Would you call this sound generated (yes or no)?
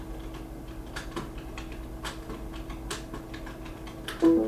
no